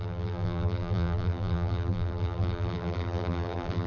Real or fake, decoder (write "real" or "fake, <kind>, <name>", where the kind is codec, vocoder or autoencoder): fake, vocoder, BigVGAN v2